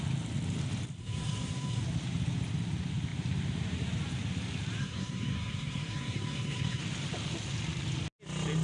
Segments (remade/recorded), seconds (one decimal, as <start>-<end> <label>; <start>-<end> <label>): 0.0-1.0 recorded; 1.0-1.8 remade; 1.8-4.8 recorded; 4.8-6.8 remade; 6.8-8.6 recorded